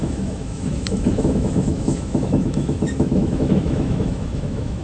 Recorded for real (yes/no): no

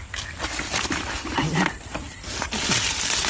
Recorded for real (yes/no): yes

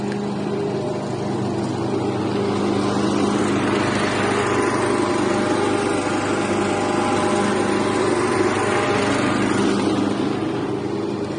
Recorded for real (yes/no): yes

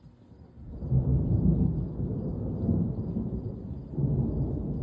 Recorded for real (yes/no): yes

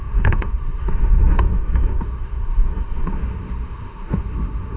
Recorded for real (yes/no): no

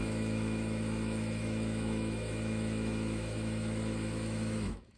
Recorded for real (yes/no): no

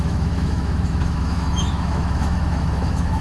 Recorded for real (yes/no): no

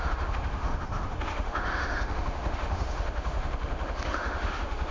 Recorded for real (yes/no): no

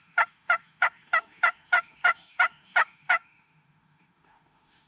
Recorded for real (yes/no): no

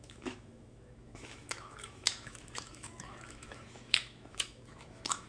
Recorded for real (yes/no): no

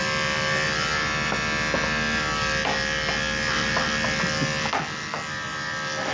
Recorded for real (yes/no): yes